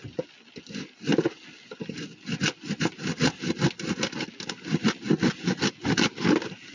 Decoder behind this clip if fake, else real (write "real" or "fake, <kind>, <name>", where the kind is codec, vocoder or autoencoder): real